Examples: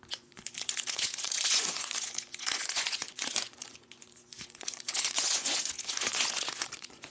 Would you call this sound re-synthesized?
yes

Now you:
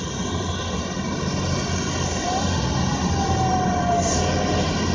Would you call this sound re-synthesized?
no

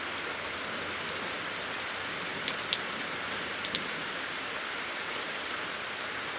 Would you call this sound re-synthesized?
yes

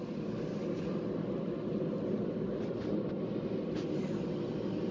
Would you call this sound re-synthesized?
no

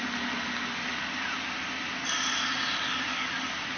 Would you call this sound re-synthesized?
no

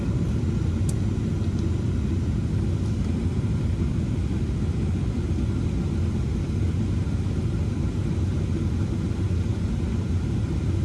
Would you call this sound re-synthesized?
no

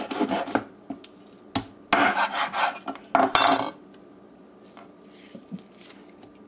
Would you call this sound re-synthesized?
no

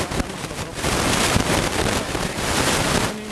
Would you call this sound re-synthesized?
no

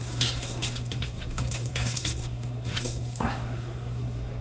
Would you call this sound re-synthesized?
yes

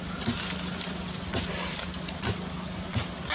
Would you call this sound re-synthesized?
yes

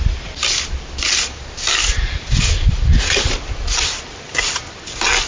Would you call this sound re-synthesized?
no